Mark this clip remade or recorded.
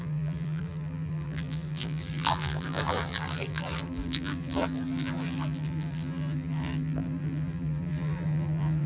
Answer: remade